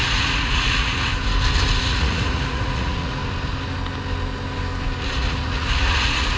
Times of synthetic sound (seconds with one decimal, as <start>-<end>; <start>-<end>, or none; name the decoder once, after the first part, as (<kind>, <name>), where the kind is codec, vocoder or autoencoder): 0.0-1.1 (vocoder, Vocos); 1.8-3.2; 5.0-6.4